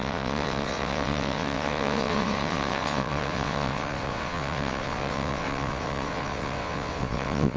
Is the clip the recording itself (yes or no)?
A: no